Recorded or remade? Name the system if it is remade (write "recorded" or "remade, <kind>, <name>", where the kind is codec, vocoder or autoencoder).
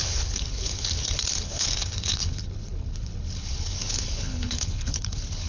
remade, codec, HILCodec